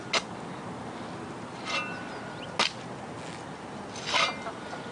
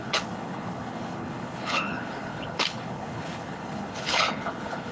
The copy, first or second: second